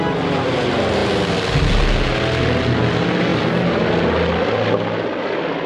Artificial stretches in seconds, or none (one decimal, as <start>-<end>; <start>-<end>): none